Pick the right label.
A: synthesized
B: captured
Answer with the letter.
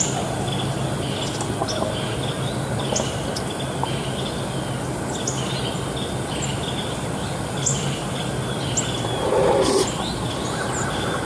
B